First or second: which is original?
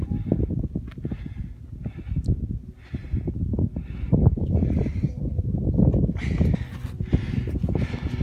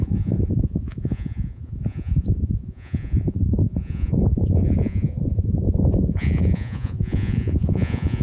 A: first